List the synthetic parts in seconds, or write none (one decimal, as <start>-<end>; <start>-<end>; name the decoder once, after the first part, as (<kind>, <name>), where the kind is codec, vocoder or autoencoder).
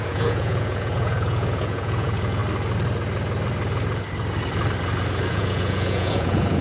0.0-2.4 (vocoder, Vocos); 5.3-6.6